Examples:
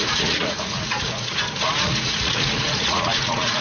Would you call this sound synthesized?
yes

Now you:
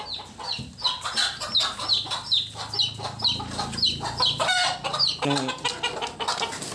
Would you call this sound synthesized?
no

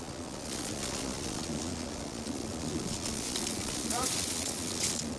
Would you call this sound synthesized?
yes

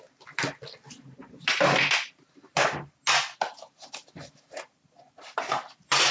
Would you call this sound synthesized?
no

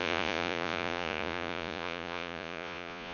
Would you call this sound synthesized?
yes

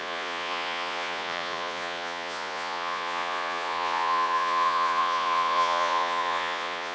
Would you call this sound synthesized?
yes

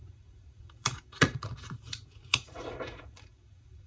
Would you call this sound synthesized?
yes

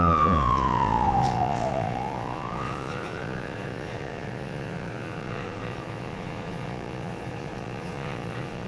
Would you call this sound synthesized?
yes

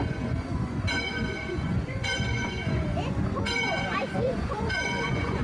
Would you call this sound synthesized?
yes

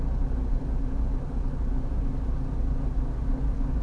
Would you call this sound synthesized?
no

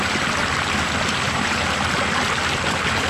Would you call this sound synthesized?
no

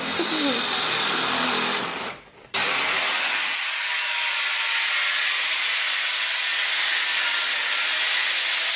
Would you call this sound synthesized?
no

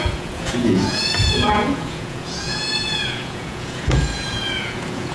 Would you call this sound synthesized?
yes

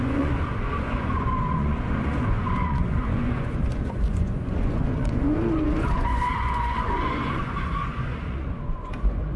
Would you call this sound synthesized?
yes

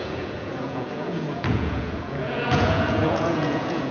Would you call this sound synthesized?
yes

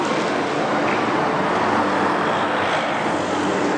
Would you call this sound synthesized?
no